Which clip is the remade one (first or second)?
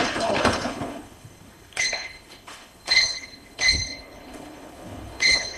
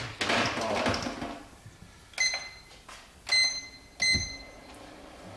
first